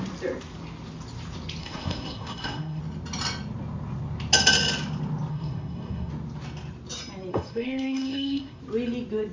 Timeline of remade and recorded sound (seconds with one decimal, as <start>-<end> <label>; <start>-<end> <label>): 0.0-1.6 recorded; 1.6-2.8 remade; 2.8-5.3 recorded; 5.3-6.1 remade; 6.1-7.3 recorded; 7.3-8.6 remade; 8.6-9.3 recorded